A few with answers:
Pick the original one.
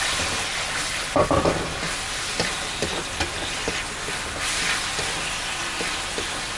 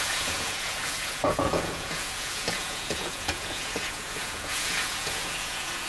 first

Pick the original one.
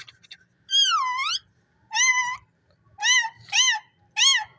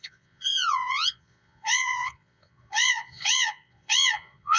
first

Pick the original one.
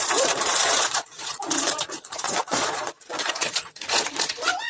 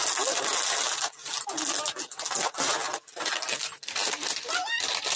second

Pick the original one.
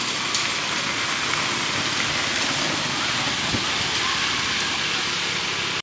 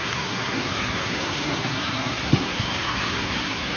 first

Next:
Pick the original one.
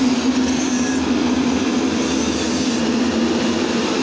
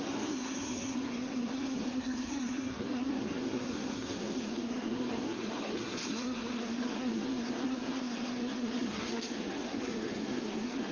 first